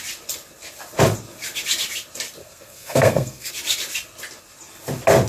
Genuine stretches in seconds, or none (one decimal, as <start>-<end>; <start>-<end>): 0.0-2.4; 3.5-5.3